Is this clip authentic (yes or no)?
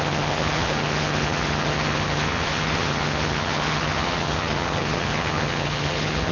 no